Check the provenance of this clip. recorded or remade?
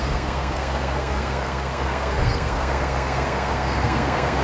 remade